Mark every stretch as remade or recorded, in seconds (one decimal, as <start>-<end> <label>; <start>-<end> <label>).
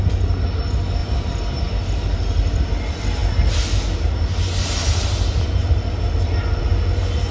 0.0-1.0 recorded; 1.0-1.6 remade; 1.6-7.3 recorded